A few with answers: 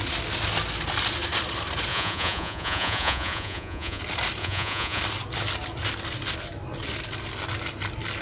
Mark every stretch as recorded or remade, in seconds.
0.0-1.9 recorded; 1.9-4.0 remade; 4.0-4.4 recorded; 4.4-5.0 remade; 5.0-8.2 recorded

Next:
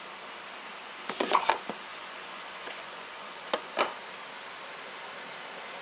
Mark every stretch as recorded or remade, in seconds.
0.0-0.8 recorded; 0.8-1.5 remade; 1.5-1.9 recorded; 1.9-3.8 remade; 3.8-5.8 recorded

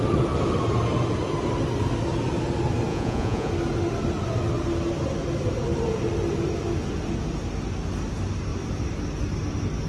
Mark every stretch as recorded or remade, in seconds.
0.0-2.9 recorded; 2.9-3.5 remade; 3.5-9.9 recorded

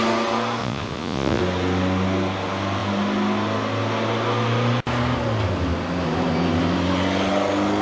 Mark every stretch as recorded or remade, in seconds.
0.0-0.6 recorded; 0.6-1.4 remade; 1.4-7.8 recorded